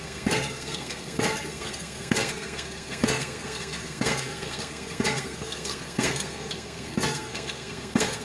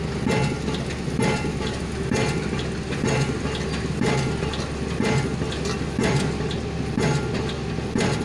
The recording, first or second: second